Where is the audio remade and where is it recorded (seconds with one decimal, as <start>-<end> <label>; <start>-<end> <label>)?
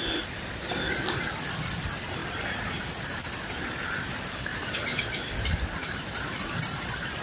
0.0-2.2 recorded; 2.2-3.0 remade; 3.0-4.5 recorded; 4.5-5.0 remade; 5.0-5.8 recorded; 5.8-7.2 remade